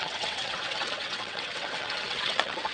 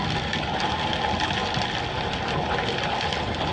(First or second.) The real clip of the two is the second